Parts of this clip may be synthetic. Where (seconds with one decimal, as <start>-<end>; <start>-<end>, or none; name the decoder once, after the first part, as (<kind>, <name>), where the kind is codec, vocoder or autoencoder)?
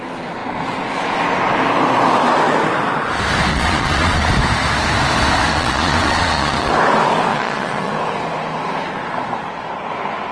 3.5-4.3 (vocoder, Vocos); 5.5-6.7; 7.3-7.9